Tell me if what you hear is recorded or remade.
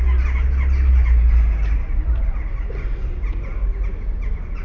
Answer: recorded